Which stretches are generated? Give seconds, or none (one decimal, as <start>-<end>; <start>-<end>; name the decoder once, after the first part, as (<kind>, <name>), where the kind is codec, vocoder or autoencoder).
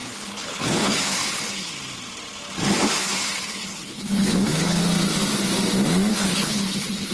0.0-1.7 (codec, HILCodec); 3.0-4.8; 6.1-7.1